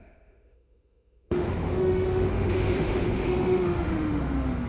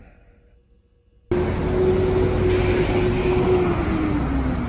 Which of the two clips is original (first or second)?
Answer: second